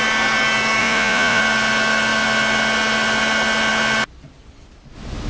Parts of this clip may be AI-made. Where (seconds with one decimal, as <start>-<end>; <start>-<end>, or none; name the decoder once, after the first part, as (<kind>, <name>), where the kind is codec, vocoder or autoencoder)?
0.8-1.4 (vocoder, Vocos)